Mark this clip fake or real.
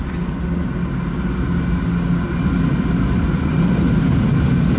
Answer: real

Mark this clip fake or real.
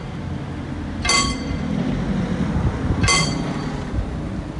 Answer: real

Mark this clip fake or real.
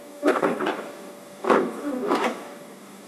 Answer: fake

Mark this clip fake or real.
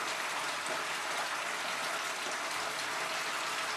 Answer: real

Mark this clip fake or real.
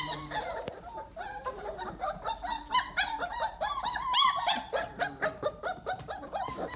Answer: fake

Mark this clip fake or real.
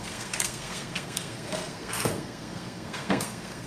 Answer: fake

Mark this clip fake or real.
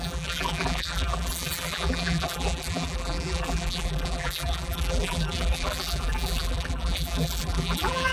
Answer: fake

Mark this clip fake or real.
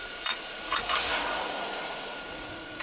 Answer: fake